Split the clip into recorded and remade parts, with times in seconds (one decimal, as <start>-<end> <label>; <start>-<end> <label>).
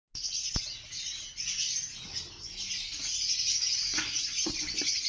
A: 0.0-3.9 recorded; 3.9-5.1 remade